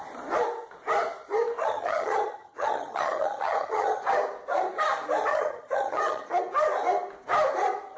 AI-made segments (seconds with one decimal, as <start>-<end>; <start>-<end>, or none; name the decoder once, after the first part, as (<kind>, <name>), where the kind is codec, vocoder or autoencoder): 1.6-4.0 (vocoder, HiFi-GAN); 5.3-6.4